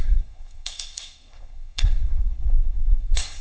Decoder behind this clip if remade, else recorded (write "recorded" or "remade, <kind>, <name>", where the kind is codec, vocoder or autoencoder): remade, codec, SNAC